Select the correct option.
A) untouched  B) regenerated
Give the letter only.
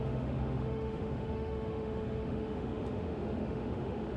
B